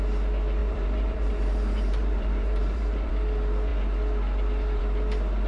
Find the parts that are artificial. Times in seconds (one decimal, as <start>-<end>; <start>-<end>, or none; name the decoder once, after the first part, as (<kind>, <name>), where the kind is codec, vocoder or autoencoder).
0.6-3.1 (vocoder, BigVGAN v2)